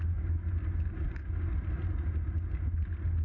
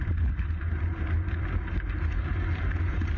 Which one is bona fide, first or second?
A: first